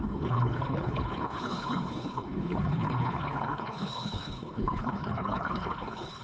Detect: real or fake fake